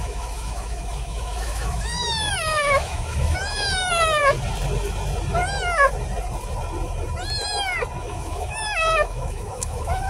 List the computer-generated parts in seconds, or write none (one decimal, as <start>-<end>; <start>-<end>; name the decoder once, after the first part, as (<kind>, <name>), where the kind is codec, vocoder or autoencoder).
0.0-4.2 (autoencoder, DAC-VAE); 8.0-10.1